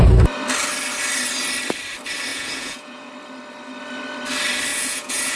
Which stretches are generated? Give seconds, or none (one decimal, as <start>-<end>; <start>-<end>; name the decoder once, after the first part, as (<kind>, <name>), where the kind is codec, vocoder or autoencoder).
2.3-3.1 (vocoder, Vocos); 4.7-5.4